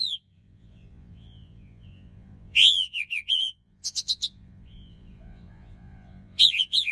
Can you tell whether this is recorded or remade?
remade